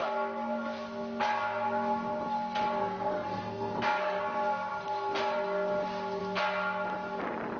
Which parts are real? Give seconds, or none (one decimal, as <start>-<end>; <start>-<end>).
0.0-2.8; 4.2-7.6

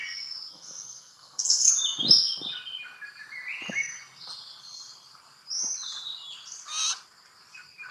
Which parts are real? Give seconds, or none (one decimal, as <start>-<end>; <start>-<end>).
0.0-0.5; 1.7-7.9